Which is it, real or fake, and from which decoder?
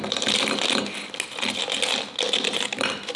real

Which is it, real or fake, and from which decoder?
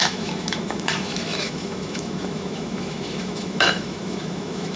fake, autoencoder, DAC-VAE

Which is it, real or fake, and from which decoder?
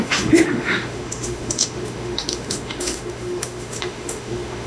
fake, autoencoder, DAC-VAE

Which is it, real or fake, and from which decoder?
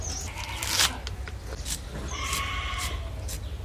real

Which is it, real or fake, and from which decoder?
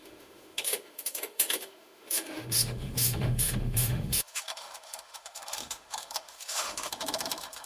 fake, autoencoder, DAC-VAE